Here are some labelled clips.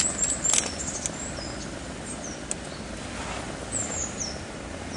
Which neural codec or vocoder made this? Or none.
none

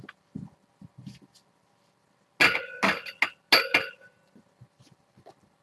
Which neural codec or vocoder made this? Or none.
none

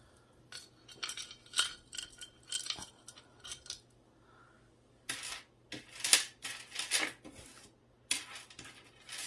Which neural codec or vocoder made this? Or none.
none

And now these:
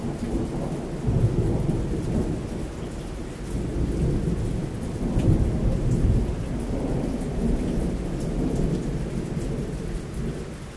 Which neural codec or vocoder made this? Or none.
none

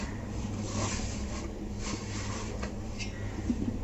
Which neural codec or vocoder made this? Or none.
none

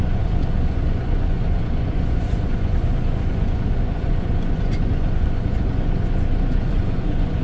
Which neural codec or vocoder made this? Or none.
vocoder, Vocos